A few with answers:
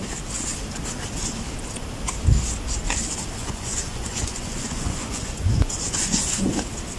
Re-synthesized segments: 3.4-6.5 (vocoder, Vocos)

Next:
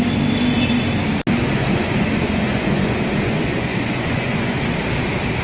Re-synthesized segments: 1.6-4.6 (vocoder, Vocos)